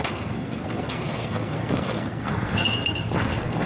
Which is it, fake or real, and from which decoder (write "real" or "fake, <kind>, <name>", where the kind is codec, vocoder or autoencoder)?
fake, codec, SNAC